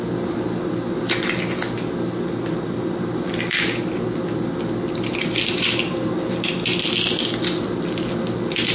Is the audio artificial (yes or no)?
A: no